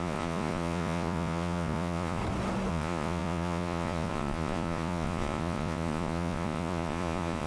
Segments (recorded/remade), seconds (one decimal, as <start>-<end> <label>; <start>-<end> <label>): 0.0-2.2 remade; 2.2-2.7 recorded; 2.7-7.5 remade